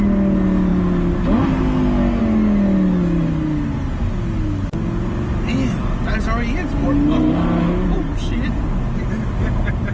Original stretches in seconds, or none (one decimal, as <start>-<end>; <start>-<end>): 0.0-9.9